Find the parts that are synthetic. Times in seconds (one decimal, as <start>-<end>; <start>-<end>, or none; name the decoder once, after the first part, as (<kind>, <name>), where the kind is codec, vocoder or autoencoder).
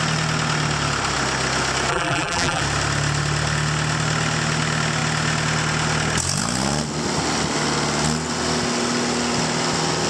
1.9-2.6 (vocoder, BigVGAN v2)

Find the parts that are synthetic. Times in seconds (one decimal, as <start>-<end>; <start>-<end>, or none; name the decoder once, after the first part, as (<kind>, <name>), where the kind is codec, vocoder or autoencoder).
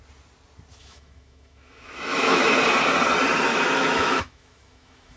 0.8-2.6 (autoencoder, DAC-VAE); 3.5-5.2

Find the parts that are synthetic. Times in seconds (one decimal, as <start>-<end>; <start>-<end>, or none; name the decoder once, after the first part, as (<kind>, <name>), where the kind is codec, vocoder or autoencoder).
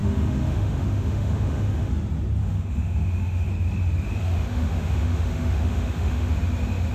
0.0-1.9 (autoencoder, DAC-VAE); 2.4-3.5; 4.2-6.3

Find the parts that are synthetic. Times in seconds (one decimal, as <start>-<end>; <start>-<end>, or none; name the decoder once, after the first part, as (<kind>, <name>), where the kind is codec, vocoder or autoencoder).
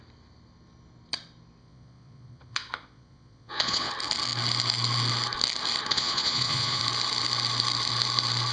1.6-3.9 (vocoder, Vocos); 5.9-6.8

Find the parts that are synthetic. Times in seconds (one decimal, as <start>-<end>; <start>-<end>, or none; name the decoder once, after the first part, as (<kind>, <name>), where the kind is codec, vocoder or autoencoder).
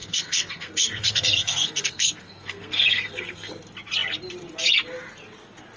0.0-3.5 (codec, SNAC)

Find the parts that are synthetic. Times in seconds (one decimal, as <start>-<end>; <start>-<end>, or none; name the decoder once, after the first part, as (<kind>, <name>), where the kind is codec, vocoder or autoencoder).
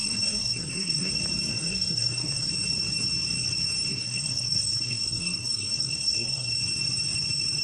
0.0-1.1 (codec, SNAC); 1.5-2.5; 3.9-6.5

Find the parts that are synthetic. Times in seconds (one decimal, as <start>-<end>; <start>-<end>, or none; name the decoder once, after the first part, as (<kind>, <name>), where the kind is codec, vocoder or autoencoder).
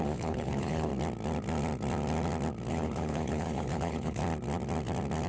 0.0-0.9 (codec, HILCodec); 2.7-4.2